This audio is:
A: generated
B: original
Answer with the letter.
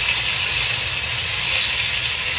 B